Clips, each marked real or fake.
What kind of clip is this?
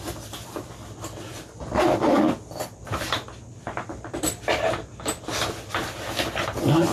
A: real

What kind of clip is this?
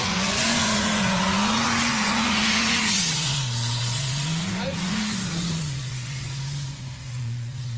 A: fake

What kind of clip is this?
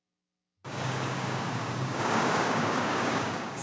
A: fake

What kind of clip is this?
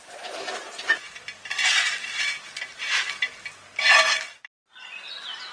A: real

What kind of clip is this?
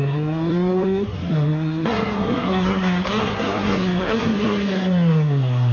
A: fake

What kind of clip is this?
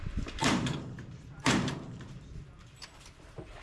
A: fake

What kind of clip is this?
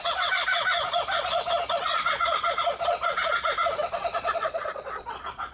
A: fake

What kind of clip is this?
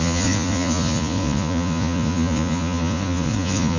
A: fake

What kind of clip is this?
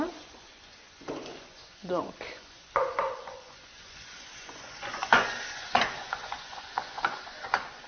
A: fake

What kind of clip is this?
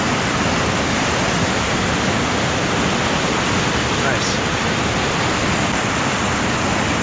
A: real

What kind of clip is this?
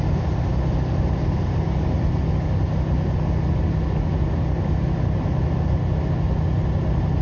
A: real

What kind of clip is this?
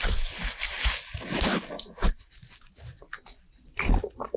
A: real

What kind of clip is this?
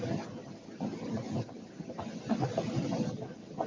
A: real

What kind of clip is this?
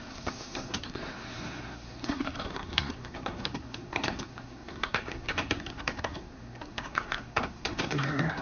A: fake